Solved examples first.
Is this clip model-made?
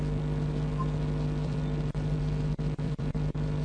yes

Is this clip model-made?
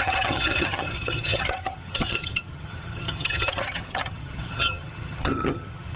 yes